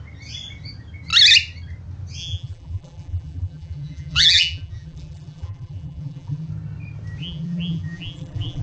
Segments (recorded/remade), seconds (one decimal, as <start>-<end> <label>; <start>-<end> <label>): 0.0-2.2 recorded; 2.2-6.5 remade; 6.5-7.2 recorded; 7.2-8.6 remade